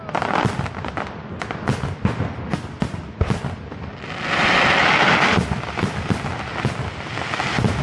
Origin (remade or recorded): recorded